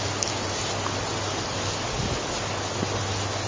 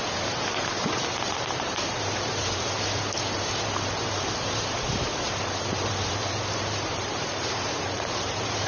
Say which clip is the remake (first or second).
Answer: second